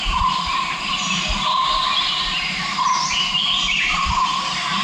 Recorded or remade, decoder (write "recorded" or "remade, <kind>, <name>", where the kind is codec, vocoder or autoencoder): remade, vocoder, BigVGAN v2